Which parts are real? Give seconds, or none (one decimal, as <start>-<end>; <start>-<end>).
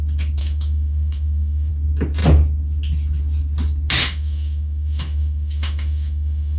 0.0-0.4; 1.7-4.0